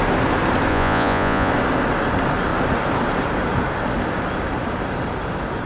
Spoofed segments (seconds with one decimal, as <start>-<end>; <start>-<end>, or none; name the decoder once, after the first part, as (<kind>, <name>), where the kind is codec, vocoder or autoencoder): 0.7-1.5 (vocoder, Vocos)